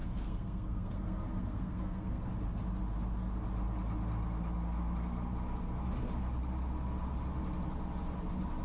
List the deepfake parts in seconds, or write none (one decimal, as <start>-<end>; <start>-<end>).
0.0-2.3